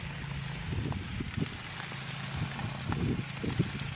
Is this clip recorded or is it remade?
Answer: recorded